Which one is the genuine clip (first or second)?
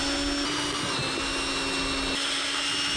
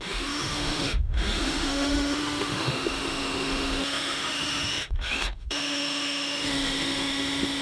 first